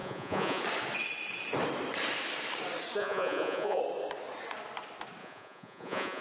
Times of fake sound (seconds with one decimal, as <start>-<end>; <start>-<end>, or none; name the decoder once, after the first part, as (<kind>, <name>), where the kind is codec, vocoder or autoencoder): 0.0-0.6 (vocoder, Vocos); 3.0-3.8; 5.2-6.2

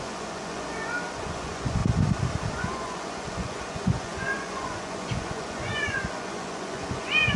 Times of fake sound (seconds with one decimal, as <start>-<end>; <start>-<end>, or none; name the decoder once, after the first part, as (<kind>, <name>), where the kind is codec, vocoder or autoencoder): 0.0-1.8 (vocoder, Vocos); 2.5-7.4

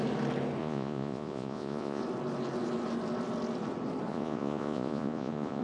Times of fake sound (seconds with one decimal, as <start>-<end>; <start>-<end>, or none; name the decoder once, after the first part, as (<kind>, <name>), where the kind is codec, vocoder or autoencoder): 0.6-2.0 (vocoder, Vocos); 4.1-5.6

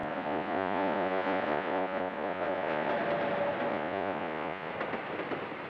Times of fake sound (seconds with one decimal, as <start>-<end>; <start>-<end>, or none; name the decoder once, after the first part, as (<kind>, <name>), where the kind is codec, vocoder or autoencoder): 0.0-2.9 (vocoder, Vocos); 3.7-4.7

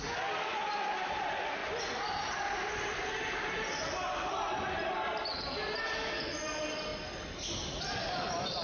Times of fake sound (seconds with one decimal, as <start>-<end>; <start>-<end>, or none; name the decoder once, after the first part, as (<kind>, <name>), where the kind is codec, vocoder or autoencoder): none